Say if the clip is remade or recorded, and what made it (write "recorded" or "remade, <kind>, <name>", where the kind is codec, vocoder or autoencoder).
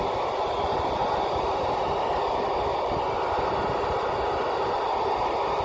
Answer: recorded